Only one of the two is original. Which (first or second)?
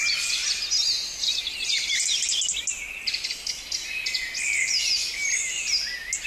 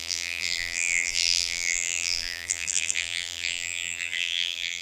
first